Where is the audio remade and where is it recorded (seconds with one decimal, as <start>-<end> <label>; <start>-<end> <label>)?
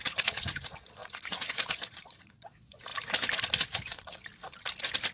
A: 0.0-2.9 remade; 2.9-3.6 recorded; 3.6-4.3 remade; 4.3-5.1 recorded